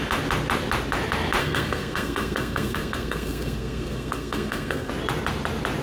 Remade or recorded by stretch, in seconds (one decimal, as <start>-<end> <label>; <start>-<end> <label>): 0.0-1.4 recorded; 1.4-4.9 remade; 4.9-5.8 recorded